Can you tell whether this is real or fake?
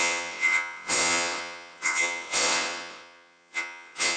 fake